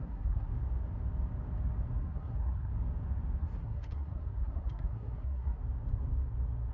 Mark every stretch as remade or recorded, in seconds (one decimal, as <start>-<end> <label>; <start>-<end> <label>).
0.0-0.5 remade; 0.5-2.0 recorded; 2.0-2.7 remade; 2.7-3.4 recorded; 3.4-5.6 remade; 5.6-6.7 recorded